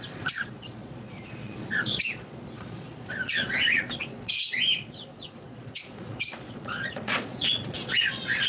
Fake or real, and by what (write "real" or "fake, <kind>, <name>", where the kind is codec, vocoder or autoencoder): fake, vocoder, Vocos